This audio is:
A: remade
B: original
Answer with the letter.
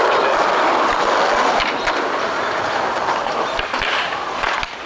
B